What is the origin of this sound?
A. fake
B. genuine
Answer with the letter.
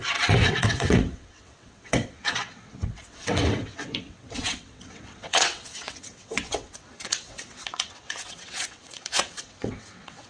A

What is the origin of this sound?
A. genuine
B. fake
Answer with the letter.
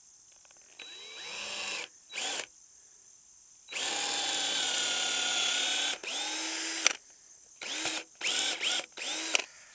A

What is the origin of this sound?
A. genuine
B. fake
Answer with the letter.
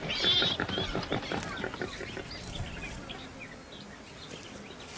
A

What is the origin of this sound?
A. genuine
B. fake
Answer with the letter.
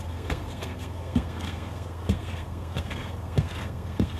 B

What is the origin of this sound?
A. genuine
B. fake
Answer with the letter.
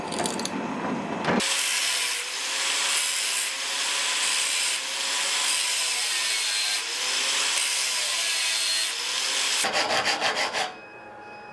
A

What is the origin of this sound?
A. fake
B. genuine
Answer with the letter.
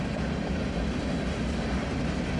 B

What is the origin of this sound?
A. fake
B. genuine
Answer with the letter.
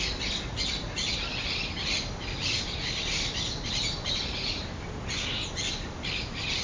B